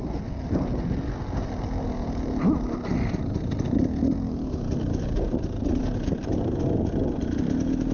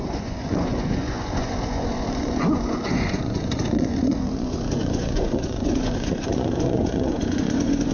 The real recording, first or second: first